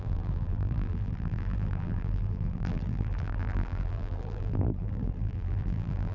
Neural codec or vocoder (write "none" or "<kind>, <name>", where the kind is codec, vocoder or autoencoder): vocoder, BigVGAN v2